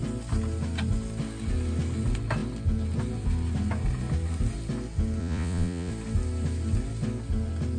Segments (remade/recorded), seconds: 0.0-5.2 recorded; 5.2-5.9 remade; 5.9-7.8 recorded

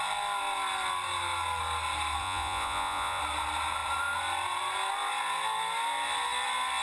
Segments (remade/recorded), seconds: 0.0-2.2 recorded; 2.2-3.2 remade; 3.2-6.8 recorded

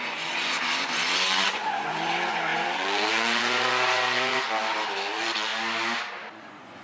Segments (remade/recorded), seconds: 0.0-4.6 remade; 4.6-5.1 recorded; 5.1-5.5 remade; 5.5-6.3 recorded; 6.3-6.8 remade

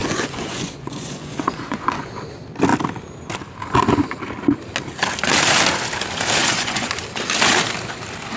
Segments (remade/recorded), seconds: 0.0-2.1 remade; 2.1-6.4 recorded; 6.4-6.9 remade; 6.9-8.4 recorded

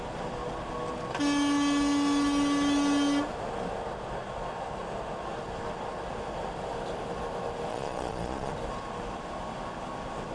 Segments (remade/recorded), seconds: 0.0-7.7 recorded; 7.7-8.5 remade; 8.5-10.3 recorded